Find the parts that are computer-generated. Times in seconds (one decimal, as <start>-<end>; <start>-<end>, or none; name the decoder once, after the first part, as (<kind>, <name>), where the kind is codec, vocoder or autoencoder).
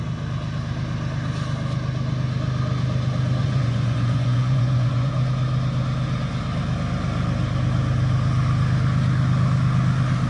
3.4-5.1 (vocoder, Vocos)